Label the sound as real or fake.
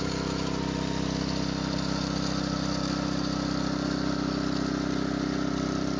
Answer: real